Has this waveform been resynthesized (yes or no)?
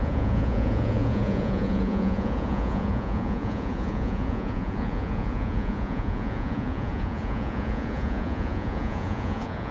yes